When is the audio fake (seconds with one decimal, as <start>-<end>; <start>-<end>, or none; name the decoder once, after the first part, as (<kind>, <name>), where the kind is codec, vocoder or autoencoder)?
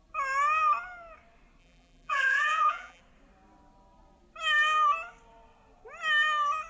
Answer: 1.6-3.0 (vocoder, BigVGAN v2)